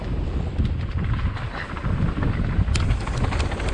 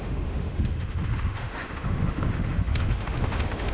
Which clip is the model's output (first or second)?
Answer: second